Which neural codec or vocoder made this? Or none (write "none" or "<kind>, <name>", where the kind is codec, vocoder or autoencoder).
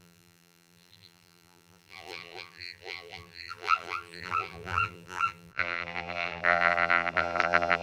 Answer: vocoder, BigVGAN v2